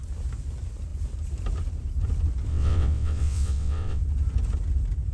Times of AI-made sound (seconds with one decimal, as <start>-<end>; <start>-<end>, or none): 2.5-4.0